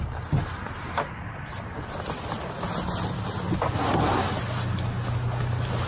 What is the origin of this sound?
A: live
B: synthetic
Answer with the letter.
A